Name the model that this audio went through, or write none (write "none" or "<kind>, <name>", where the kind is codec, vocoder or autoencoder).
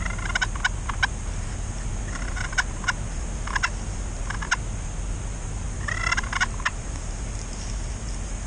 none